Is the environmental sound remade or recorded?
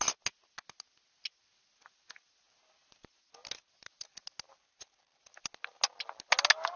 recorded